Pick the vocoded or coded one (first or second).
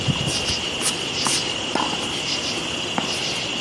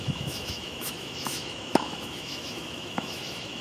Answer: second